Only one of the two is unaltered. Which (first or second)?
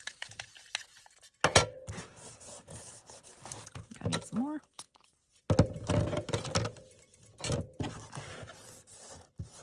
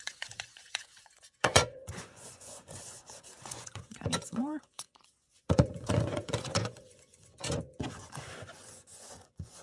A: first